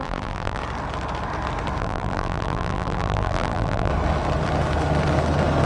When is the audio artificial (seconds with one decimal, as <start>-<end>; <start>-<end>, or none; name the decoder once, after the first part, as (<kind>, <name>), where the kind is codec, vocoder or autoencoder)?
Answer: 0.0-0.6 (vocoder, BigVGAN v2); 1.8-3.9